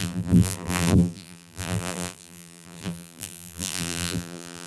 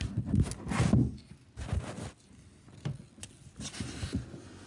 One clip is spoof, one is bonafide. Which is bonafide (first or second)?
second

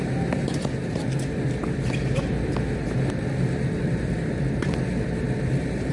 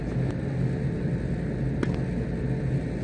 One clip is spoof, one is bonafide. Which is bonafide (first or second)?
second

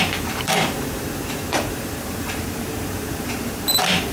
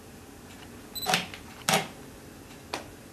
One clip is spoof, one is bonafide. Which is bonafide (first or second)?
second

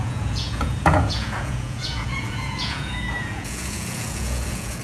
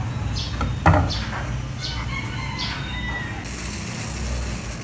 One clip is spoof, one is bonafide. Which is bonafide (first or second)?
second